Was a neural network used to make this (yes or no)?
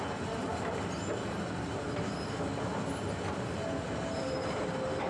no